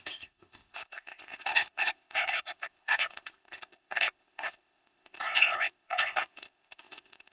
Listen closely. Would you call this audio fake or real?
fake